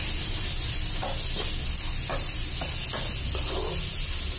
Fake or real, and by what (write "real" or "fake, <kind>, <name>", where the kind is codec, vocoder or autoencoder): real